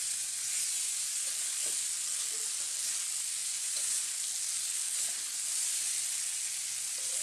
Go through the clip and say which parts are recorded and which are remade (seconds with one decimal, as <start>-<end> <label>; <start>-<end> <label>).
0.0-1.3 remade; 1.3-3.4 recorded; 3.4-4.1 remade; 4.1-7.2 recorded